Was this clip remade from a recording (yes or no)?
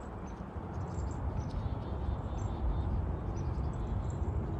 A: no